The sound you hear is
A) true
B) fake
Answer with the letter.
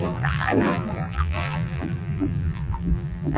B